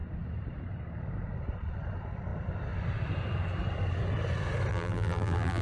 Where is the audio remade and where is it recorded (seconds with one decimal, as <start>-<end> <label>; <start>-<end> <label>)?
0.0-4.7 recorded; 4.7-5.6 remade